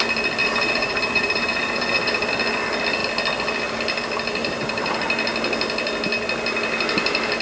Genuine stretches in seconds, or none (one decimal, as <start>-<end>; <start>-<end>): 0.0-0.4; 2.3-4.4; 5.0-7.4